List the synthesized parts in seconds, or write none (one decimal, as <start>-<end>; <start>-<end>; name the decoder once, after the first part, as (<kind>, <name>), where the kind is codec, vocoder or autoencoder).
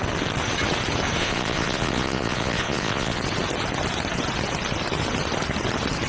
1.2-3.2 (vocoder, Vocos)